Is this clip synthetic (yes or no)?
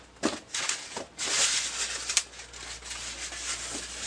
no